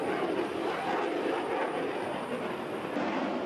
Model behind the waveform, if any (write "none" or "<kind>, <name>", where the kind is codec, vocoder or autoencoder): none